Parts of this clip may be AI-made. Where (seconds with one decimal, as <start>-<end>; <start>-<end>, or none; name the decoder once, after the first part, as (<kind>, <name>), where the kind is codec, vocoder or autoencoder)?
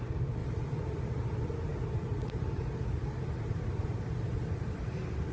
0.4-1.0 (vocoder, BigVGAN v2); 1.7-5.3